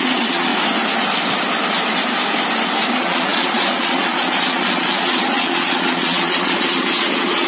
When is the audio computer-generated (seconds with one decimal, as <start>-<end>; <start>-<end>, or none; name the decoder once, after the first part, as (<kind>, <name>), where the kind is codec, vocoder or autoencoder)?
0.0-0.5 (vocoder, Vocos); 2.9-7.5